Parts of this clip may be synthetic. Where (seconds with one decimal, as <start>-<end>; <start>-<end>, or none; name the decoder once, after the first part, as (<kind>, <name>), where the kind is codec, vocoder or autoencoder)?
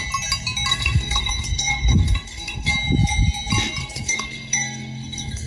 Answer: 0.7-2.7 (codec, SNAC); 3.8-5.5